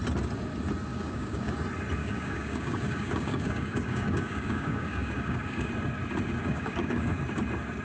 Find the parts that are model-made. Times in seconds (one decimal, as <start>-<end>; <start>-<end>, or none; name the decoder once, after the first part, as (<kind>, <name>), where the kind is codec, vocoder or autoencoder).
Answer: 0.9-1.5 (codec, DAC); 2.0-5.7; 6.4-7.2